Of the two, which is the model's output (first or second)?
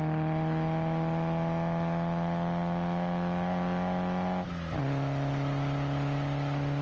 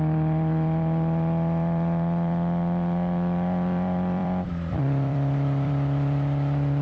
second